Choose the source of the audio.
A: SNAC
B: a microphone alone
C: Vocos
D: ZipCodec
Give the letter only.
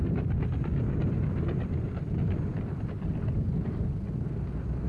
B